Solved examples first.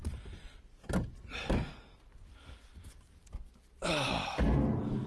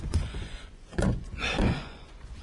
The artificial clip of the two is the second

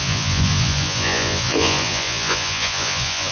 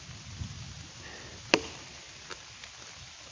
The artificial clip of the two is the first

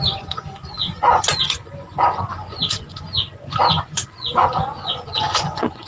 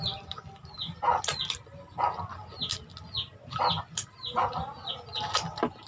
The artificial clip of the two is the first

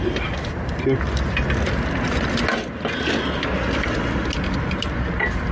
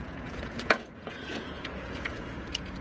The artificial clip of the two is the second